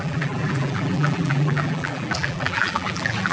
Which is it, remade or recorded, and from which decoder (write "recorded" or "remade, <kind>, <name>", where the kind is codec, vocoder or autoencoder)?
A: remade, vocoder, BigVGAN v2